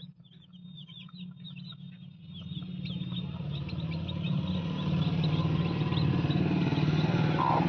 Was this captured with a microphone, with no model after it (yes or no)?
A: yes